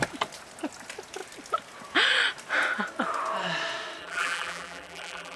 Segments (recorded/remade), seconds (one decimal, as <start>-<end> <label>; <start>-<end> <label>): 0.0-4.0 recorded; 4.0-5.4 remade

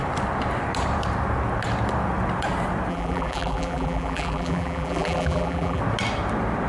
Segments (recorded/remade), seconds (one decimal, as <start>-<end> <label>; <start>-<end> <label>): 0.0-2.9 recorded; 2.9-5.8 remade; 5.8-6.7 recorded

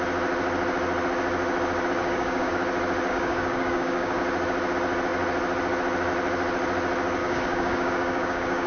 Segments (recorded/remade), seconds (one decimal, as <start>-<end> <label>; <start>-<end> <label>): 0.0-2.0 recorded; 2.0-2.5 remade; 2.5-3.1 recorded; 3.1-4.2 remade; 4.2-7.2 recorded; 7.2-8.7 remade

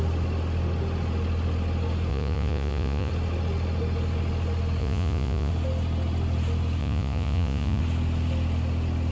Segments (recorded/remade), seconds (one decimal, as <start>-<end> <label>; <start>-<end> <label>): 0.0-2.1 recorded; 2.1-3.1 remade; 3.1-4.8 recorded; 4.8-5.5 remade; 5.5-6.8 recorded; 6.8-7.8 remade; 7.8-9.1 recorded

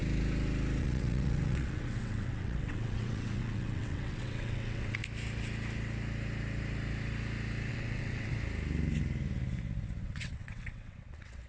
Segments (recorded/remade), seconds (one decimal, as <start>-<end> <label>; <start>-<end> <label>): 0.0-0.8 recorded; 0.8-5.0 remade; 5.0-7.7 recorded; 7.7-8.3 remade; 8.3-10.0 recorded; 10.0-11.5 remade

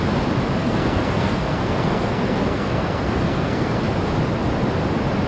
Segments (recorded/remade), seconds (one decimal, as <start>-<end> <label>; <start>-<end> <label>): 0.0-0.6 recorded; 0.6-3.8 remade; 3.8-5.3 recorded

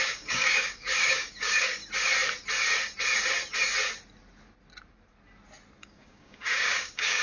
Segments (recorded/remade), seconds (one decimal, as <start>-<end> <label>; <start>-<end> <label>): 0.0-1.8 remade; 1.8-5.8 recorded; 5.8-7.2 remade